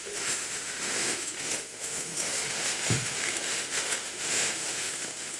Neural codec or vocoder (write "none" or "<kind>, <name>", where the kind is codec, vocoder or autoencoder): autoencoder, DAC-VAE